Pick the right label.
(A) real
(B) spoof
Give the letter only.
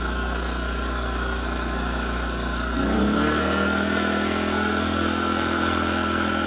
B